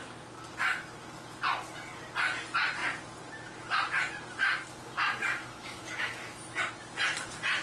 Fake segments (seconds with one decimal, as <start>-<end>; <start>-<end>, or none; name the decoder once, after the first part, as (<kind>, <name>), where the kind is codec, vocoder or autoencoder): 5.4-6.7 (autoencoder, DAC-VAE)